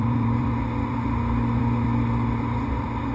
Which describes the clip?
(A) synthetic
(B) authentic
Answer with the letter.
A